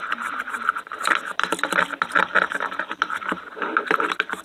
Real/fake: real